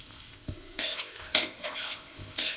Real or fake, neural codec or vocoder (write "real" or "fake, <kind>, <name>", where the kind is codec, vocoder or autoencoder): fake, codec, ZipCodec